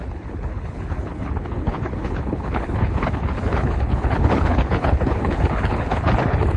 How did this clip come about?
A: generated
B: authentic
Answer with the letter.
A